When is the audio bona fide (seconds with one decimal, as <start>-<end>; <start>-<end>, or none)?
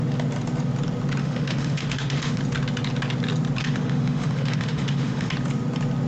0.0-1.2; 2.4-3.6; 5.3-6.1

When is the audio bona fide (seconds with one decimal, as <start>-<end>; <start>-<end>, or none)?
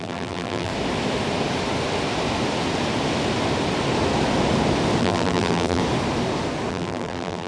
0.7-5.0; 5.8-6.7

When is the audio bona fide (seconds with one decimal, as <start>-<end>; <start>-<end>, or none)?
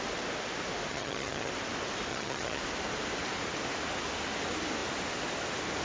0.0-0.9; 1.5-2.1; 2.6-5.8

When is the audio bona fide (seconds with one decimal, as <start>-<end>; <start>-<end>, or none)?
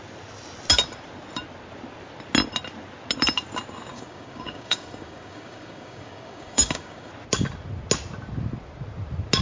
0.0-3.9; 7.1-9.4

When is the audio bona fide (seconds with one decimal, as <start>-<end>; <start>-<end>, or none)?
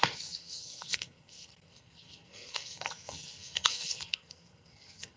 none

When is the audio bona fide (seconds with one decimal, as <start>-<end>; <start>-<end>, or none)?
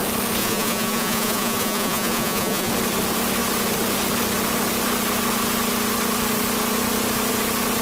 0.0-0.4; 2.7-7.8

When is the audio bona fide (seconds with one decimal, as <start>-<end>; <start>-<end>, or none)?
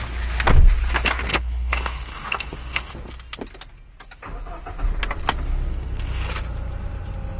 0.0-1.3; 2.9-5.7; 6.3-7.4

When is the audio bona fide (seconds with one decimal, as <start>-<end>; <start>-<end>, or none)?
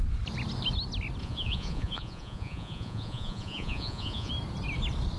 0.0-1.2; 4.3-5.2